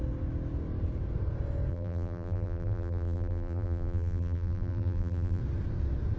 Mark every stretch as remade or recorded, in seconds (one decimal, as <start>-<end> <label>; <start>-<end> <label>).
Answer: 0.0-1.7 recorded; 1.7-5.4 remade; 5.4-6.2 recorded